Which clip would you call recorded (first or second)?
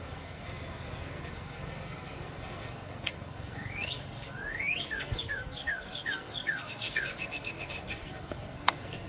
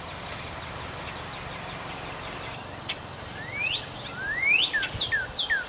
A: second